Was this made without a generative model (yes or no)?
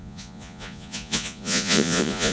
no